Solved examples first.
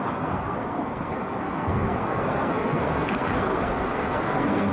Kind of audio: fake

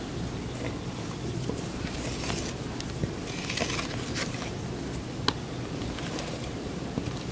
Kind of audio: real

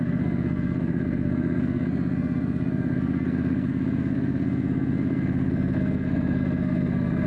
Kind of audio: fake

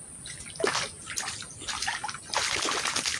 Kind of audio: real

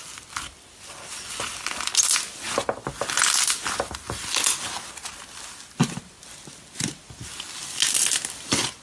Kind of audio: real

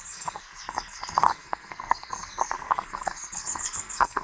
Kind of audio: fake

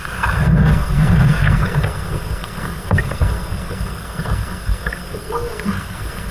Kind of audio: fake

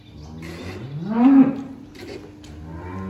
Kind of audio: real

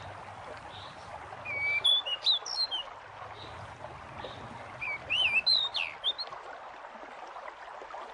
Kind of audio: real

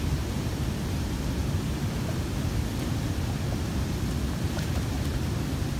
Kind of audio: real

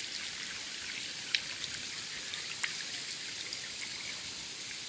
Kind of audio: real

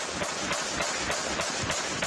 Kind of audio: real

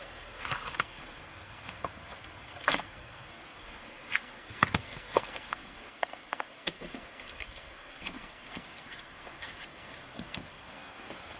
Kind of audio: fake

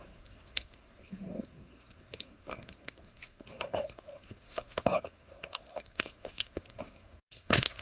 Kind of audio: fake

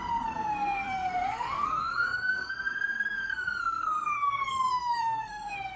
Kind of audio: fake